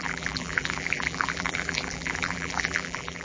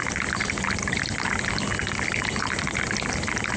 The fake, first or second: first